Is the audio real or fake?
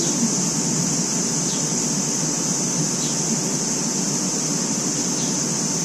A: real